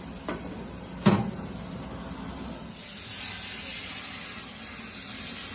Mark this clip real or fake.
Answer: real